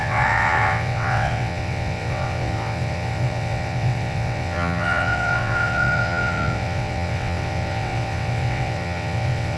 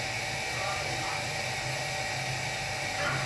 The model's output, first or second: first